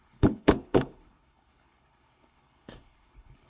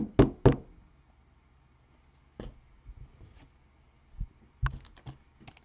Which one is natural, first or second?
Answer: second